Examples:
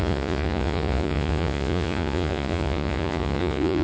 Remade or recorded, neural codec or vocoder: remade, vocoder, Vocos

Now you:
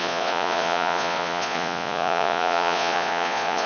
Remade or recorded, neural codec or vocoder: remade, vocoder, Vocos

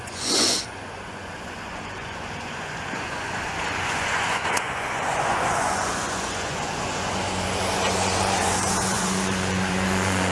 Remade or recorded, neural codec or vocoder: remade, vocoder, Vocos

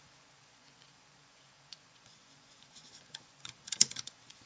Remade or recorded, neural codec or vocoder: remade, vocoder, Vocos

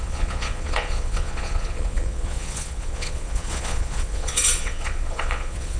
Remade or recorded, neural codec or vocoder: remade, vocoder, Vocos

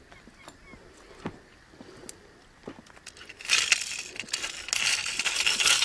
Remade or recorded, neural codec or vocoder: recorded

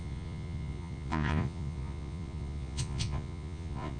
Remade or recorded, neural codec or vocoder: remade, vocoder, Vocos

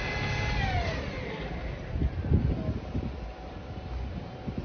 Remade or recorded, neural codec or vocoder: recorded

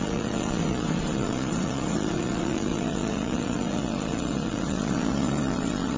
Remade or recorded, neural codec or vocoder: remade, vocoder, Vocos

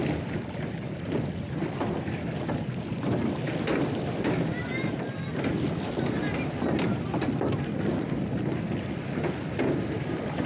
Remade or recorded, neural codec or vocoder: recorded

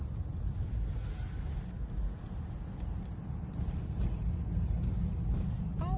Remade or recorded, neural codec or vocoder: recorded